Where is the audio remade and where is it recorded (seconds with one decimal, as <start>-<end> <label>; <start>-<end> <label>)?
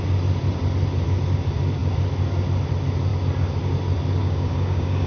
0.0-4.2 recorded; 4.2-5.1 remade